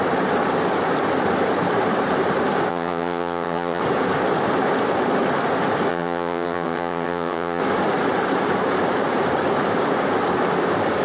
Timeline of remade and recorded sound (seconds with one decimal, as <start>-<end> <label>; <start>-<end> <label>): 0.0-2.7 recorded; 2.7-3.8 remade; 3.8-5.9 recorded; 5.9-7.6 remade; 7.6-11.0 recorded